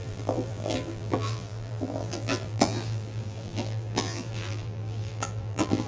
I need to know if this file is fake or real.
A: fake